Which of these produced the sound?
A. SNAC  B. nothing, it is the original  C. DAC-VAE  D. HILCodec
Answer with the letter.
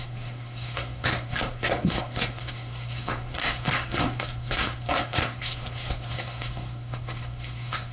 A